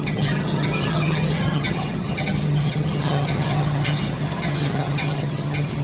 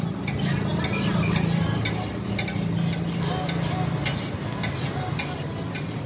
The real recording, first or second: second